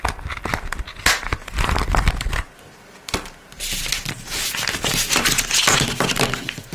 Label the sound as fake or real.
real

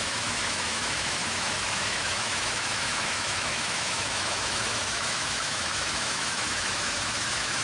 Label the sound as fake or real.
fake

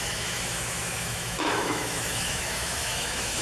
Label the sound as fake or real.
fake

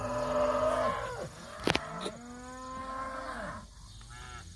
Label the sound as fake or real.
real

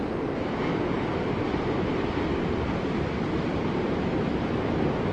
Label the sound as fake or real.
real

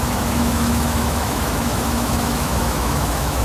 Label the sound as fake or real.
fake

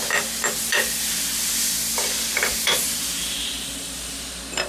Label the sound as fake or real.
real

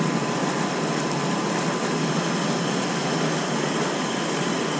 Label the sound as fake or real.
real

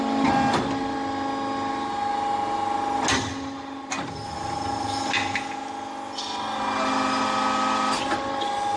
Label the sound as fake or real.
real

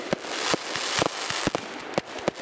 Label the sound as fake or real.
real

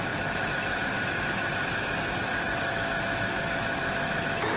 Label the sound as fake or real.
fake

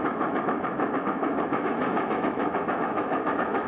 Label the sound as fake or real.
fake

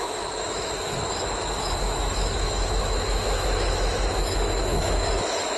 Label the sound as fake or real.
fake